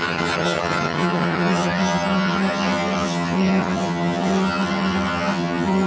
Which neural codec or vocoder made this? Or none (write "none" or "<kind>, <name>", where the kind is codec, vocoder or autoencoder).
vocoder, HiFi-GAN